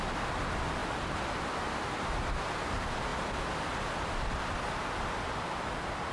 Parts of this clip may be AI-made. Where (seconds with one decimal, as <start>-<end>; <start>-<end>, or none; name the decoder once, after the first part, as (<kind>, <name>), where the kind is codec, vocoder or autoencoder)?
none